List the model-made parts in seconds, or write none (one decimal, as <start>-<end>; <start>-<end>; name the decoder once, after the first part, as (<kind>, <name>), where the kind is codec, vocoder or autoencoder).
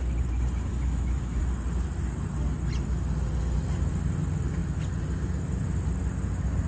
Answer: 0.7-1.4 (autoencoder, DAC-VAE)